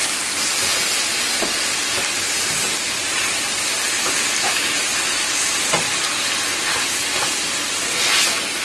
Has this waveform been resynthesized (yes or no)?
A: no